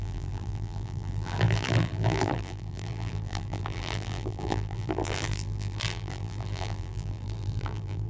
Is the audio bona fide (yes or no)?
no